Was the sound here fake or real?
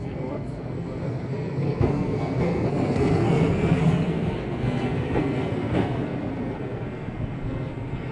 fake